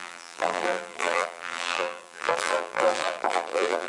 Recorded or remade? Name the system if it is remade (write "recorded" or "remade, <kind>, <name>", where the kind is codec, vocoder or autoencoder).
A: remade, vocoder, BigVGAN v2